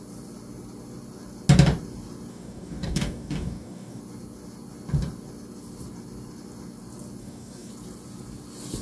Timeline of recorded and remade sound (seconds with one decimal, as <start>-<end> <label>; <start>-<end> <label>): 0.0-2.3 recorded; 2.3-4.0 remade; 4.0-7.2 recorded; 7.2-7.7 remade; 7.7-8.8 recorded

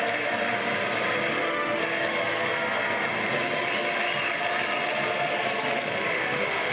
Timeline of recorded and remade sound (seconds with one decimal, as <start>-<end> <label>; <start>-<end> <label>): 0.0-1.3 recorded; 1.3-1.8 remade; 1.8-6.1 recorded; 6.1-6.7 remade

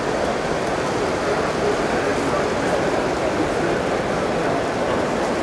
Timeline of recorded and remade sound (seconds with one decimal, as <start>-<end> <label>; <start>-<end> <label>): 0.0-5.4 recorded